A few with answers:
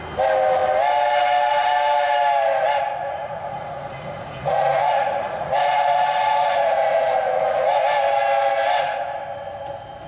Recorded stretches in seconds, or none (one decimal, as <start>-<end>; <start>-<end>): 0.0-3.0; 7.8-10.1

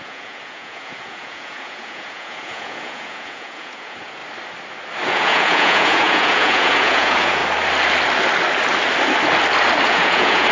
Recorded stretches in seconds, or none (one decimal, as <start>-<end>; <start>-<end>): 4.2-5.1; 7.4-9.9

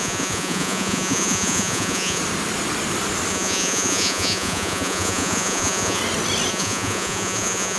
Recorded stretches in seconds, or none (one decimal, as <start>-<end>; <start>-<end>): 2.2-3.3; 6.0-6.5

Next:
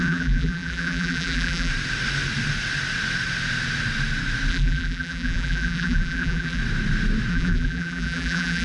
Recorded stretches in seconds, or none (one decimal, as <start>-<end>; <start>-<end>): 1.7-4.5; 6.6-7.3